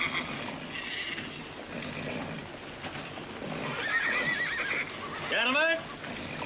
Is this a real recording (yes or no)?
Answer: yes